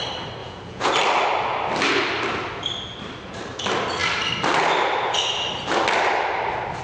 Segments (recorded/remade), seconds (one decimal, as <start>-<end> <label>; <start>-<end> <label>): 0.0-0.4 recorded; 0.4-0.9 remade; 0.9-6.8 recorded